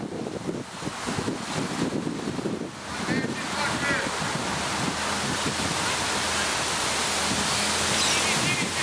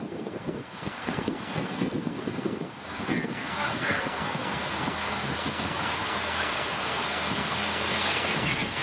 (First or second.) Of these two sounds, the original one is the first